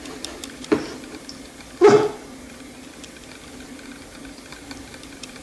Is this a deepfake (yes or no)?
no